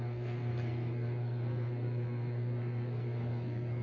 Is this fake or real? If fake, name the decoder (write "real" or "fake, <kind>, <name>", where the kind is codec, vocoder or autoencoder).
fake, codec, SNAC